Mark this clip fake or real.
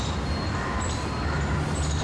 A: real